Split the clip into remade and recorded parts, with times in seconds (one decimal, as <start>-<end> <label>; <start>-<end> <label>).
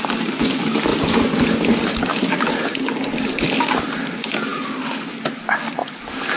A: 0.0-2.1 recorded; 2.1-3.8 remade; 3.8-5.8 recorded; 5.8-6.4 remade